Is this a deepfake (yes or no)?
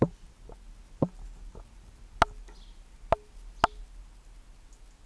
no